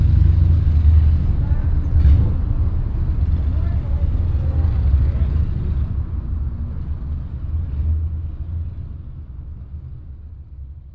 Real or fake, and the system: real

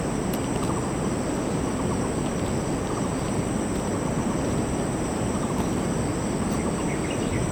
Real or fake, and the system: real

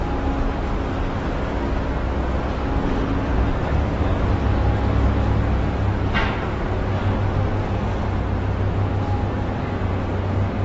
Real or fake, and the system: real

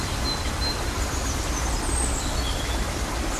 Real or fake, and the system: real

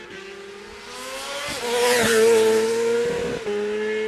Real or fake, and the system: real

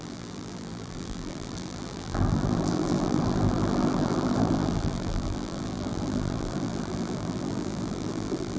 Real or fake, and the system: fake, vocoder, BigVGAN v2